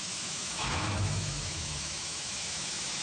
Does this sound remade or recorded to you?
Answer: remade